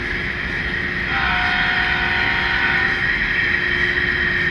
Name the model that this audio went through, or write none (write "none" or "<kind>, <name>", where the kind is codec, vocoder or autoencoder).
none